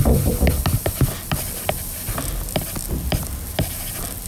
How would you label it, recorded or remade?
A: recorded